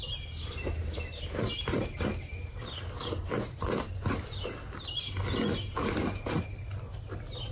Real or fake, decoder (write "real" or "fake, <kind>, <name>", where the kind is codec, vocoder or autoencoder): real